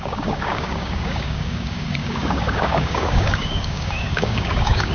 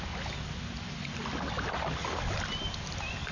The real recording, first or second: second